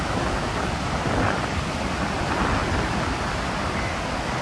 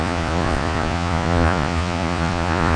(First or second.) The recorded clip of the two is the first